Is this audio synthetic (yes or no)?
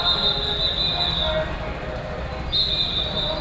no